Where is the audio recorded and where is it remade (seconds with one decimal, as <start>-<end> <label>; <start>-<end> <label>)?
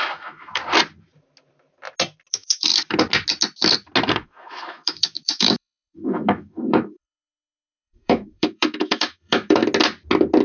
0.0-0.6 remade; 0.6-2.3 recorded; 2.3-2.7 remade; 2.7-4.1 recorded; 4.1-9.6 remade; 9.6-10.4 recorded